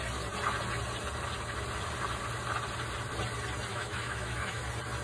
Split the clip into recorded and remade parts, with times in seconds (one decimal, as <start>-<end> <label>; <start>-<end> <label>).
0.0-3.7 recorded; 3.7-4.6 remade; 4.6-5.0 recorded